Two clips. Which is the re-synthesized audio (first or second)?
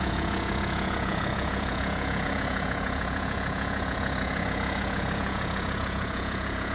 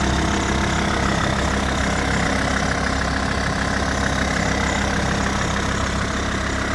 first